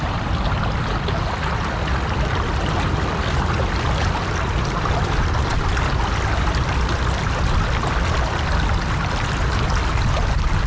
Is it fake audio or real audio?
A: real